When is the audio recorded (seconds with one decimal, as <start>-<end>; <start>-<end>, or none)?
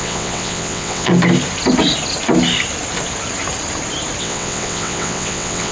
1.1-4.2